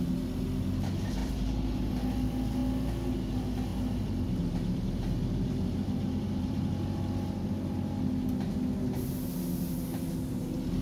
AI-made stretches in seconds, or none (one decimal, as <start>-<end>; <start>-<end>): 1.2-1.9; 3.7-6.7